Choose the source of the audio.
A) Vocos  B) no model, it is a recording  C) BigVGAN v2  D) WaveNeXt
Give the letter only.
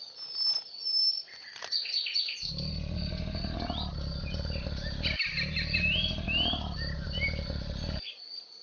B